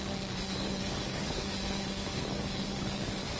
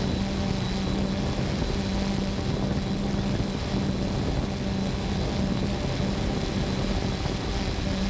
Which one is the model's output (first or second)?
first